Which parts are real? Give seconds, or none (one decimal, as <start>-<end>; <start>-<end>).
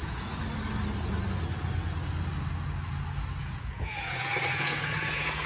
0.4-3.4